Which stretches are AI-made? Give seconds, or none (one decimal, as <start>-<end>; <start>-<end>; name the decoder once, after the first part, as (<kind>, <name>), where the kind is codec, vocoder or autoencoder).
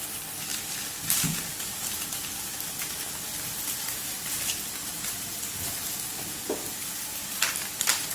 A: none